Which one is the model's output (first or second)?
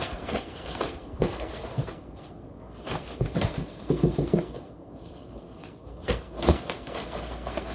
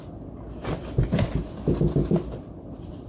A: first